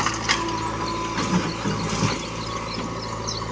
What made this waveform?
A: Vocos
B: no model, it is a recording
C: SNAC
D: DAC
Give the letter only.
B